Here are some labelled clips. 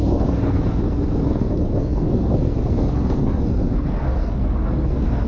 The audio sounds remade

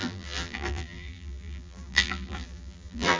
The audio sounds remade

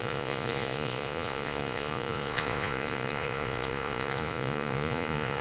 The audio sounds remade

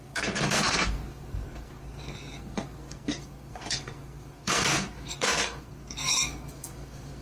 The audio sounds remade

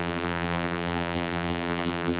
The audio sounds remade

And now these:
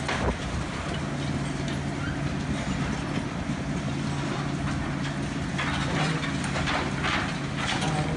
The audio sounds recorded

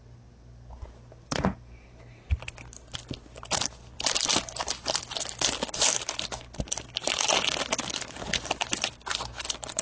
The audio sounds recorded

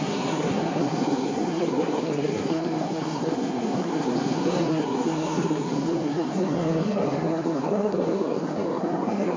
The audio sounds remade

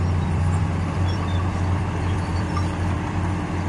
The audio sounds remade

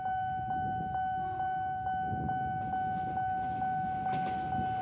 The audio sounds recorded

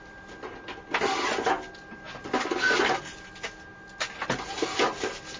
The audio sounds recorded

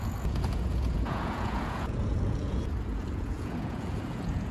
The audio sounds remade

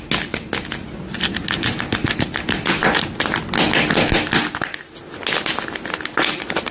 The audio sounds recorded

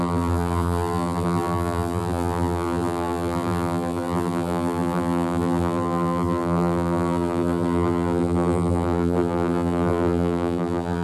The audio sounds remade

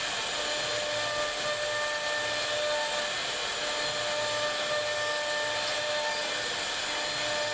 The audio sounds recorded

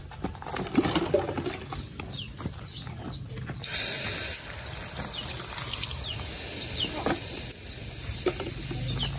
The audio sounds recorded